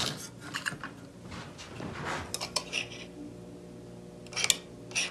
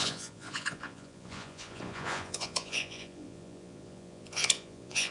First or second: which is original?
first